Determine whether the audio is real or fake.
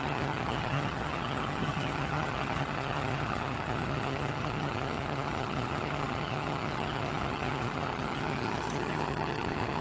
fake